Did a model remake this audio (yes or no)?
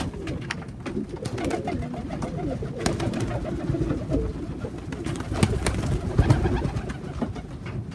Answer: no